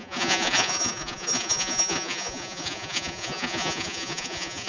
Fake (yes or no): yes